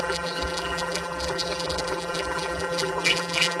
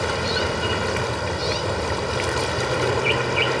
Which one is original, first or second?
second